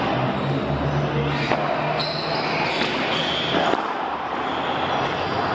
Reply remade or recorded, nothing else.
recorded